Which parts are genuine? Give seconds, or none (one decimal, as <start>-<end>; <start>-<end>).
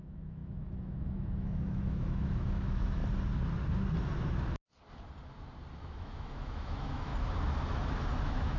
3.0-5.8; 7.1-8.2